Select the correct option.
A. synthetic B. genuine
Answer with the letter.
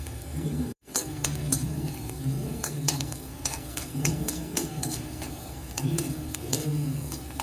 A